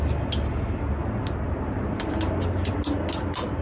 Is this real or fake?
real